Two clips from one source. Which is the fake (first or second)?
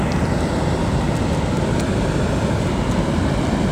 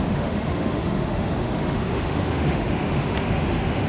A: second